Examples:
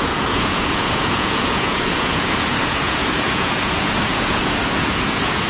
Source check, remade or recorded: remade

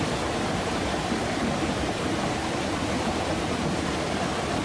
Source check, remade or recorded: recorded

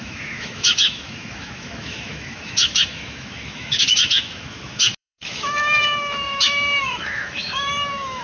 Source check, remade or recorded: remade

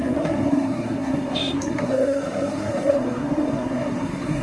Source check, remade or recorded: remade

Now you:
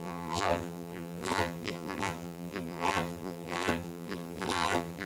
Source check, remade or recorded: remade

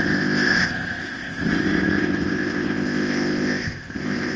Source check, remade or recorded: remade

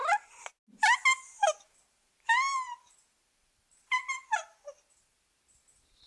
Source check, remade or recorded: recorded